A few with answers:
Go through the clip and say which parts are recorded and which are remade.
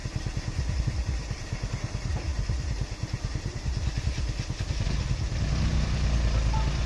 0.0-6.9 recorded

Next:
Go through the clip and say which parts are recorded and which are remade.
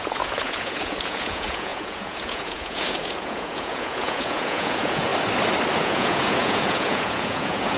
0.0-5.1 remade; 5.1-5.8 recorded; 5.8-7.8 remade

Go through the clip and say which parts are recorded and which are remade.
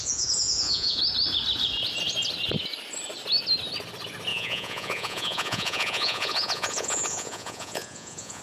0.0-1.0 remade; 1.0-4.3 recorded; 4.3-8.4 remade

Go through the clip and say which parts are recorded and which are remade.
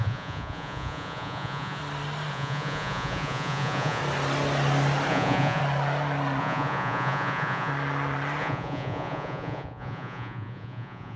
0.0-1.8 remade; 1.8-2.3 recorded; 2.3-4.0 remade; 4.0-5.1 recorded; 5.1-5.6 remade; 5.6-6.4 recorded; 6.4-7.7 remade; 7.7-8.4 recorded; 8.4-11.2 remade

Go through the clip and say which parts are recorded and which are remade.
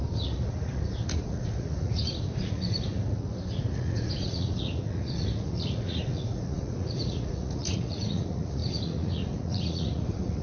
0.0-10.4 remade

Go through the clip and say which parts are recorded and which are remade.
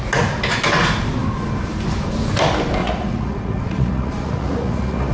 0.0-2.8 recorded; 2.8-5.1 remade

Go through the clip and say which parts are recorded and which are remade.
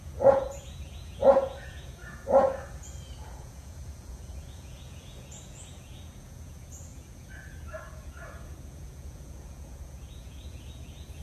0.0-11.2 remade